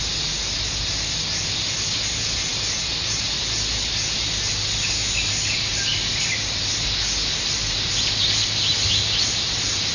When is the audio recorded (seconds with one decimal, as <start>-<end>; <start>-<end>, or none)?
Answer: 0.0-9.9